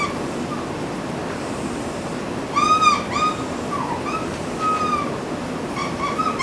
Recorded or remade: recorded